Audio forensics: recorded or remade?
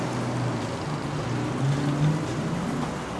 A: recorded